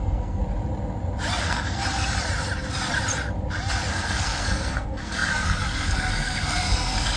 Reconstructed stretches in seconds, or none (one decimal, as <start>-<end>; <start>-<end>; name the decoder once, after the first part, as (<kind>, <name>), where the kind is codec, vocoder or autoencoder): 0.0-0.4 (codec, SNAC); 1.4-1.8; 3.9-7.2